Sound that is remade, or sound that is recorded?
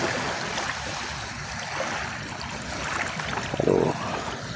recorded